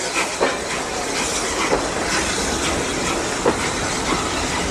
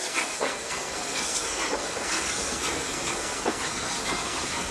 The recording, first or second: first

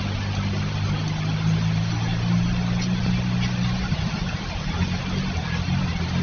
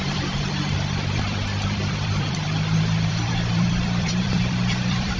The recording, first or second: first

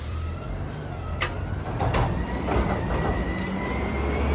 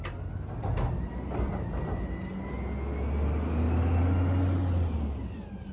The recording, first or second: second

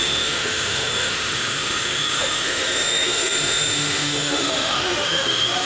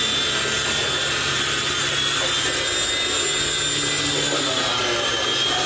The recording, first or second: second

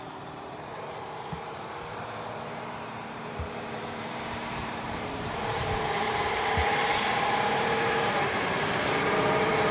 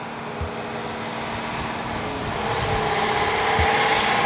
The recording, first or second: second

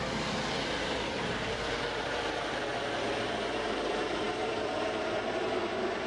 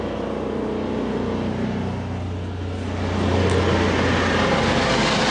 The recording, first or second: second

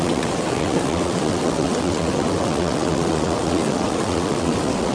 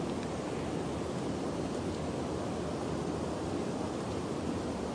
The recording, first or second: second